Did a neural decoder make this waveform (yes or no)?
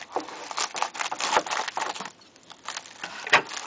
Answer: no